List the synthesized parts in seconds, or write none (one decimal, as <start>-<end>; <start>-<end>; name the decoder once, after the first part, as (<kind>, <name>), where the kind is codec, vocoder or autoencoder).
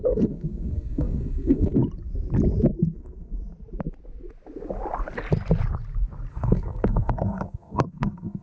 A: 0.0-1.8 (codec, SNAC); 2.8-3.3; 6.3-8.4